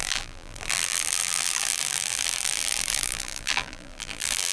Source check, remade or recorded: remade